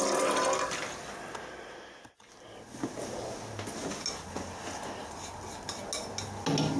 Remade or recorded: recorded